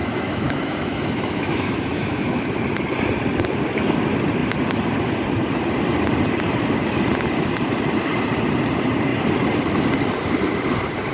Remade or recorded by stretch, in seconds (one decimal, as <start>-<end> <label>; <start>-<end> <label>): 0.0-2.6 remade; 2.6-11.1 recorded